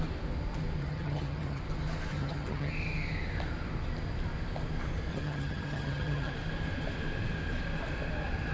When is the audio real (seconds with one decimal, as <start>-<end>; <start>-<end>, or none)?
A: 0.0-0.8; 1.6-2.1; 2.7-5.1; 6.3-8.5